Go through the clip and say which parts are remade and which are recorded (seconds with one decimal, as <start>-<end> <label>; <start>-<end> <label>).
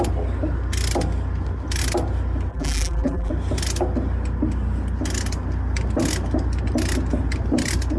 0.0-2.5 recorded; 2.5-3.3 remade; 3.3-8.0 recorded